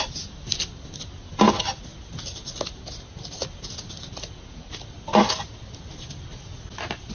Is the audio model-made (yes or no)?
no